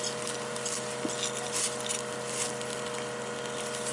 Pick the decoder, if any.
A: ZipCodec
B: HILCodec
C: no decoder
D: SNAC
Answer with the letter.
C